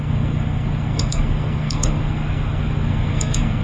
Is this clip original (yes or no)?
no